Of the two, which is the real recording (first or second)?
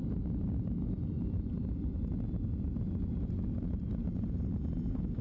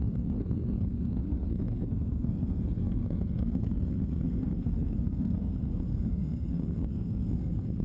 first